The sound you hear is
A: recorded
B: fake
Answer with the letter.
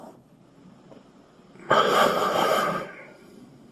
A